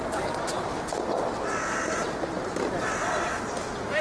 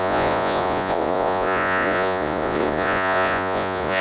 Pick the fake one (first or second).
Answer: second